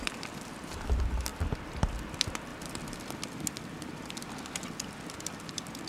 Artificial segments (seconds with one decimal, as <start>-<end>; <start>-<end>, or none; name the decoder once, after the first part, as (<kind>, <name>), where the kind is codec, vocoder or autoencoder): none